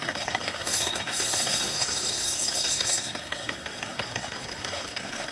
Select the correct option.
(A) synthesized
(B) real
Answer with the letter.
A